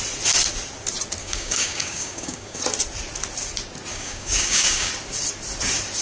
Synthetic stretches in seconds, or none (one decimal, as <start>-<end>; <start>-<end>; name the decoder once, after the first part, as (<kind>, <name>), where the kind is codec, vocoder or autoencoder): 1.2-2.6 (codec, DAC); 3.9-4.9